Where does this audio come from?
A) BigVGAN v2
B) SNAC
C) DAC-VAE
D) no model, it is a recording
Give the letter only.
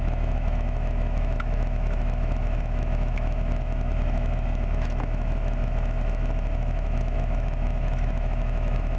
C